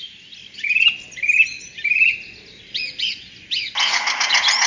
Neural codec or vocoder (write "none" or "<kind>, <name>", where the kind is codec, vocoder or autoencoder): none